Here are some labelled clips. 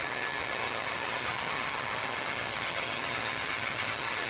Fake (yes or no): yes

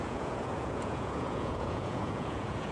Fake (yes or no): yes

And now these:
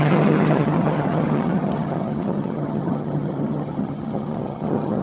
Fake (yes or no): yes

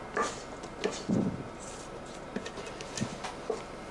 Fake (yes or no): no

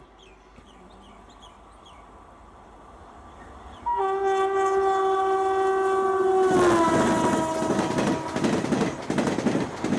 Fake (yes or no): no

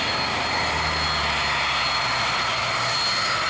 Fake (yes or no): no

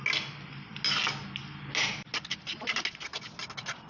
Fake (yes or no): no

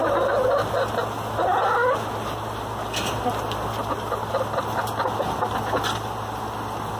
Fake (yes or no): no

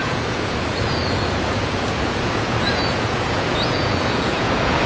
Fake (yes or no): yes